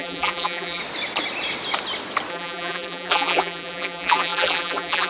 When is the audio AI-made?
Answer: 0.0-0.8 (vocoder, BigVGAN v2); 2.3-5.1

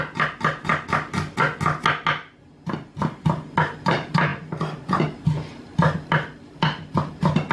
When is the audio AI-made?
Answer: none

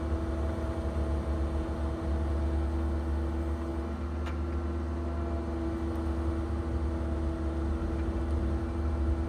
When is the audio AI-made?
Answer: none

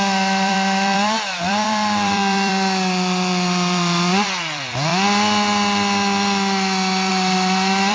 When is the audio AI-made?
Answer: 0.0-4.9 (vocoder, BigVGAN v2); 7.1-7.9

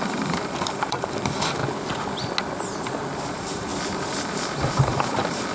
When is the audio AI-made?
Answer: 0.0-1.6 (vocoder, BigVGAN v2); 3.3-3.7; 4.2-5.5